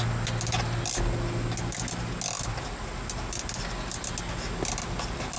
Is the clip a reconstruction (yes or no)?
no